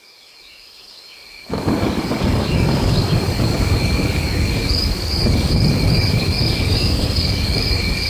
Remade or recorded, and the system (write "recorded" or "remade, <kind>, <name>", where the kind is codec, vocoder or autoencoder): remade, codec, DAC